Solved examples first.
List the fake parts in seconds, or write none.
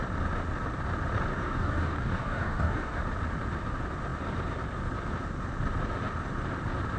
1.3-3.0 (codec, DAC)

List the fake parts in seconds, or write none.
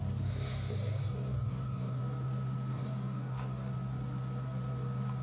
1.0-2.0 (codec, DAC); 2.7-3.7